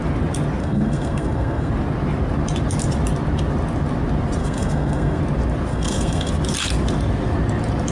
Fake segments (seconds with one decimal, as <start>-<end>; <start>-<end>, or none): 0.6-1.7; 4.4-5.2; 5.7-6.3